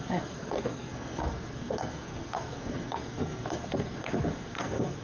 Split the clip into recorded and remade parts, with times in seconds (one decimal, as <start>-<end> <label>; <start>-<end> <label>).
0.0-5.0 remade